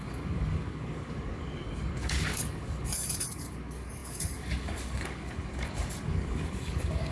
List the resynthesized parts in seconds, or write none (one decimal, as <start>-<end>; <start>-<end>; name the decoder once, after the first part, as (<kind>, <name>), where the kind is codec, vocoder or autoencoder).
0.0-7.1 (codec, DAC)

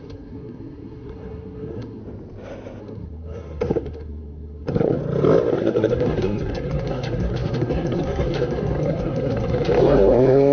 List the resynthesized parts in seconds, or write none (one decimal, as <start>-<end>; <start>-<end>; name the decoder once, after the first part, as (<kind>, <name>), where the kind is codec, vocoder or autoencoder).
0.0-2.0 (codec, SNAC); 2.8-5.0; 5.5-10.5

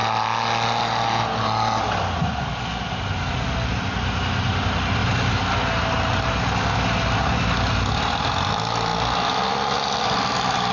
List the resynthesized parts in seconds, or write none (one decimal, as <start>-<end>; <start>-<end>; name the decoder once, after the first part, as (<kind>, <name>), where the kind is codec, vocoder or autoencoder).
3.7-5.0 (vocoder, BigVGAN v2); 8.5-8.9; 9.5-10.7

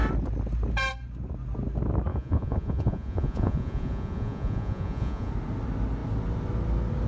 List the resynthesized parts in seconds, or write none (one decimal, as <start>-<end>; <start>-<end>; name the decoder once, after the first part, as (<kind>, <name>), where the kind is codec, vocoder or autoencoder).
2.1-5.3 (vocoder, Vocos)

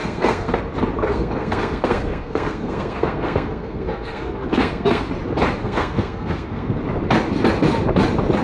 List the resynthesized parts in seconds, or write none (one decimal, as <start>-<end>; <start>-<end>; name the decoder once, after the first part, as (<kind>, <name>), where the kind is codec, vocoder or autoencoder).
0.0-0.6 (codec, SNAC); 1.1-5.0; 5.6-6.8

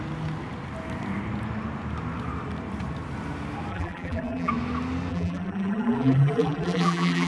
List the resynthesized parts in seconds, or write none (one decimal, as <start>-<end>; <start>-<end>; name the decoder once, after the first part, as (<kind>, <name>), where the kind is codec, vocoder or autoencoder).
3.7-4.5 (vocoder, BigVGAN v2); 5.1-7.3

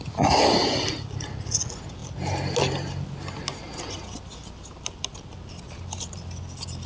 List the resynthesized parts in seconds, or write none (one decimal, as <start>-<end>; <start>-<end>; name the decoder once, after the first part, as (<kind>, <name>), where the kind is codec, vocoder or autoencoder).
none